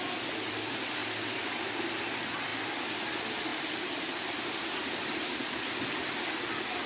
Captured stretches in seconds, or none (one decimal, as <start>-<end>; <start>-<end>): 0.0-1.0; 1.7-3.5; 5.0-6.9